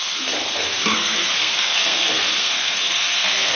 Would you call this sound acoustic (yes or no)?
no